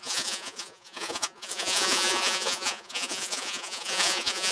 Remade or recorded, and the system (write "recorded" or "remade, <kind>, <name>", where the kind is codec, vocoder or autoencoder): remade, vocoder, Vocos